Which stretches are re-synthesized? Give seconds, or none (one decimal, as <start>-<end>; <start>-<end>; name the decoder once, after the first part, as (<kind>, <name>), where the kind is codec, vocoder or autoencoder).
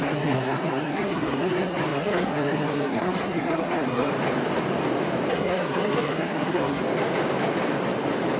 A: 0.0-4.1 (codec, SNAC); 5.3-6.8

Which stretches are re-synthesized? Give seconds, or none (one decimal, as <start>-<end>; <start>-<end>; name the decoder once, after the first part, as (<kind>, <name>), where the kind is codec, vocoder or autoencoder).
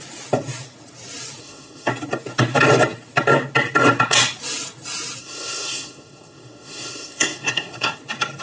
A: 1.4-1.9 (codec, SNAC); 5.2-8.0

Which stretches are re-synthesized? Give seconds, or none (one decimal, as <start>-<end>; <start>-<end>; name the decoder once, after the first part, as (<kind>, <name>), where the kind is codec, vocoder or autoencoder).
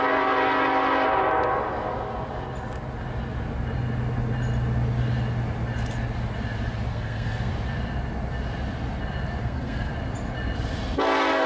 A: 6.9-7.5 (codec, SNAC); 9.4-9.9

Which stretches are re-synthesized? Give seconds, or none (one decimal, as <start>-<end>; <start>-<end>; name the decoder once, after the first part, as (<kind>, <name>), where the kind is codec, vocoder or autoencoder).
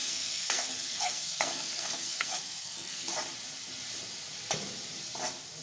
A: 0.0-3.1 (codec, SNAC)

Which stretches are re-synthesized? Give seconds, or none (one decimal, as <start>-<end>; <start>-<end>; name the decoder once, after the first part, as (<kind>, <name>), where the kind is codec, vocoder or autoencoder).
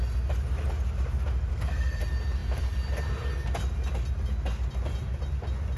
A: 1.5-2.0 (codec, SNAC)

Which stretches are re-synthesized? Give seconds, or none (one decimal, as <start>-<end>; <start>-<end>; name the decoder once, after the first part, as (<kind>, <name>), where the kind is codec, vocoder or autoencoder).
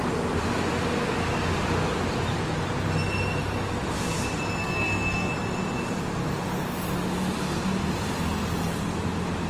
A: 4.6-5.3 (codec, SNAC)